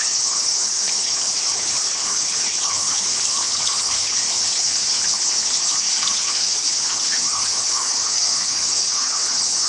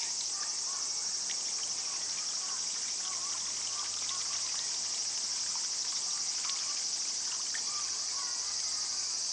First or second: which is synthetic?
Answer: first